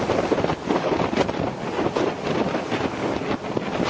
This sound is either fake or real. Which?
real